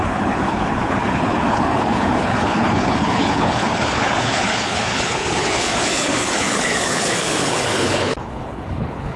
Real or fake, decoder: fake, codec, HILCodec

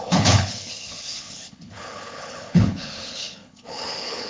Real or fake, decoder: fake, codec, HILCodec